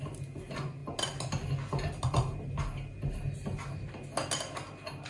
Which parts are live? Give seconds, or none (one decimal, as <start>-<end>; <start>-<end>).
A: 0.0-5.1